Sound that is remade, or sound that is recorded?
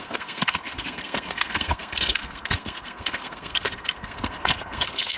remade